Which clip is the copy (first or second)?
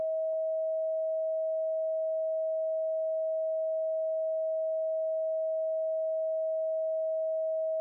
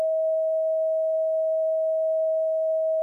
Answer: second